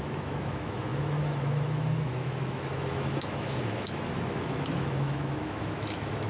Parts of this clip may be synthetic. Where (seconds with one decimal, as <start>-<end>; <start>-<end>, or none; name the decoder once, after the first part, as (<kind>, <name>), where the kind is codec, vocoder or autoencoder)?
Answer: 0.0-6.3 (autoencoder, DAC-VAE)